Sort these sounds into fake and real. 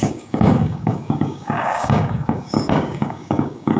fake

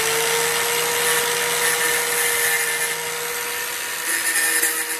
real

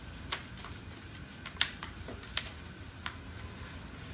real